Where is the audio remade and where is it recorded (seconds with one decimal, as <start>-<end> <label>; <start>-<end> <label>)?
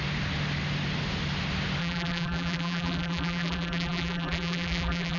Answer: 0.0-1.8 recorded; 1.8-5.2 remade